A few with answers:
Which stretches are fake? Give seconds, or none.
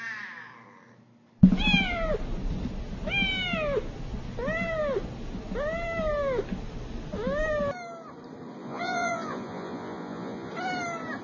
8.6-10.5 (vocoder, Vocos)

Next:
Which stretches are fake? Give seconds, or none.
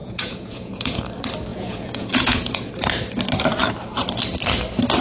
0.0-1.0 (vocoder, Vocos); 1.5-2.7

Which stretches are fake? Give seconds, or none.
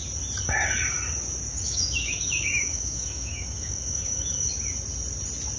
1.5-4.5 (autoencoder, DAC-VAE)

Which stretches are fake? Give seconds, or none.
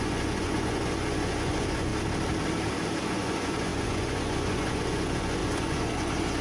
0.0-1.9 (vocoder, Vocos); 3.0-6.4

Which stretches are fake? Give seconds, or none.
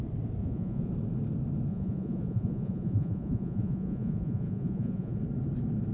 0.4-0.9 (vocoder, Vocos); 1.7-5.2